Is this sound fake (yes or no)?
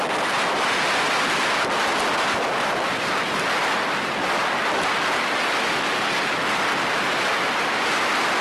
no